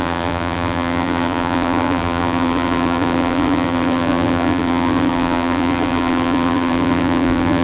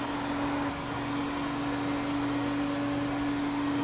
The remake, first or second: first